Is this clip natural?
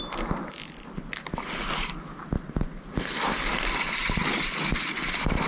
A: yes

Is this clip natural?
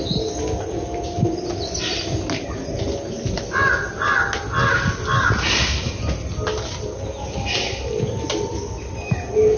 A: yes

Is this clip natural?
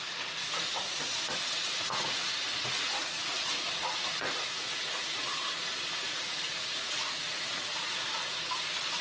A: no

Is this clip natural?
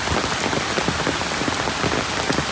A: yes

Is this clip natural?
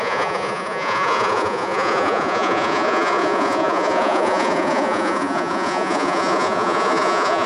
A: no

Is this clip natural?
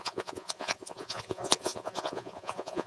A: no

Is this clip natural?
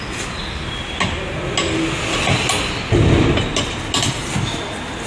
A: yes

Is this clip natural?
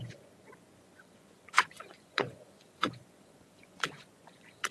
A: no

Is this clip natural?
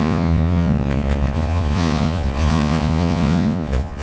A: no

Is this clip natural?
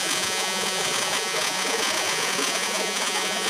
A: no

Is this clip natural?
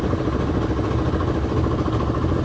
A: yes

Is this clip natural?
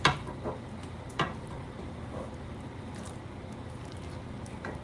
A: yes